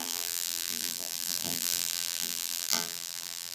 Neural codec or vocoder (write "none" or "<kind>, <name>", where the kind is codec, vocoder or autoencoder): vocoder, BigVGAN v2